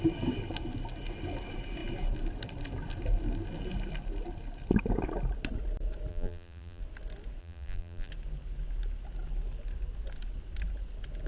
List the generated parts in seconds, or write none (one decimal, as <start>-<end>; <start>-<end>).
6.1-6.8; 7.4-8.1